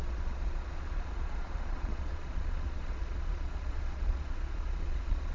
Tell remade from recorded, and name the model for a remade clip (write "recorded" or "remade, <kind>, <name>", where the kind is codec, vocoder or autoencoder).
remade, vocoder, Vocos